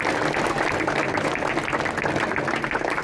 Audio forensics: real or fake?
real